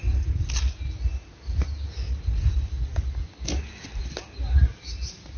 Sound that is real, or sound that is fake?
real